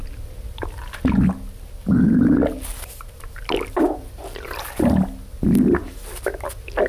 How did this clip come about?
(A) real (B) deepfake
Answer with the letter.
A